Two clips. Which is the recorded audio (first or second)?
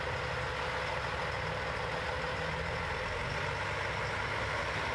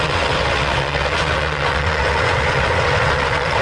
first